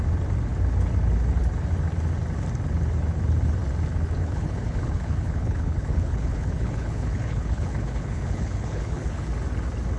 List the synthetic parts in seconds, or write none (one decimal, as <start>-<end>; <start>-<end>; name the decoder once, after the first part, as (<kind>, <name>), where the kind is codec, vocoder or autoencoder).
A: 4.2-9.3 (codec, HILCodec)